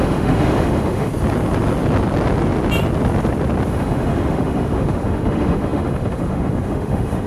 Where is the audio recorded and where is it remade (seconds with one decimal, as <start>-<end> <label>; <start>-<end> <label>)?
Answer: 0.0-1.1 remade; 1.1-3.7 recorded; 3.7-7.3 remade